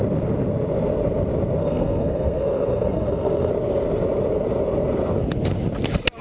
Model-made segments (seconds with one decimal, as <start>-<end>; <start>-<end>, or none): 1.6-3.5